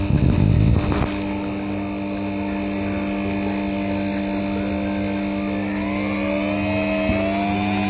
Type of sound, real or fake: real